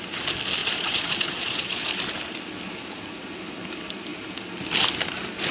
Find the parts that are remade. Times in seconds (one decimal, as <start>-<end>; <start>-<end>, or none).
0.6-1.9

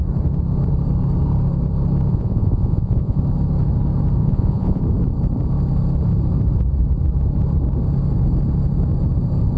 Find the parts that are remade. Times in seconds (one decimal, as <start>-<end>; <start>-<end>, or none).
2.1-3.2; 4.2-4.8

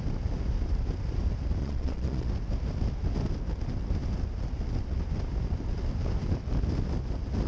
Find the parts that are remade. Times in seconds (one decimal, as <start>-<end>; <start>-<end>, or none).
1.6-2.3

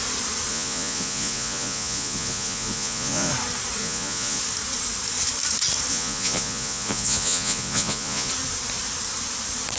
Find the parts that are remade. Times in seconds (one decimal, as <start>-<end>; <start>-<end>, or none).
0.5-3.3; 3.8-4.4; 5.9-8.3

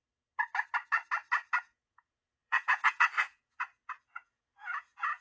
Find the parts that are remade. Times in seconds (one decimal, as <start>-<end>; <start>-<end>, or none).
1.6-5.2

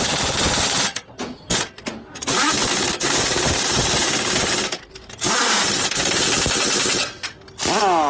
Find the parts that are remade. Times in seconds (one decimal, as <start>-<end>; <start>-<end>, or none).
none

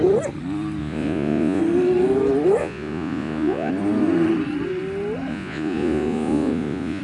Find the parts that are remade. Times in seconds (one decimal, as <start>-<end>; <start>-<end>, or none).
0.8-1.6; 2.6-3.7; 5.3-7.0

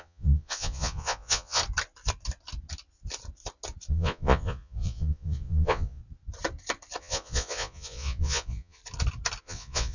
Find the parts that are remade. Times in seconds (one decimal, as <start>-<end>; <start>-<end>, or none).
0.0-1.6; 3.9-6.0; 7.0-8.8; 9.4-9.9